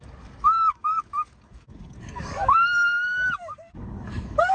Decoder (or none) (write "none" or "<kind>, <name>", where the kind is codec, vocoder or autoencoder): codec, DAC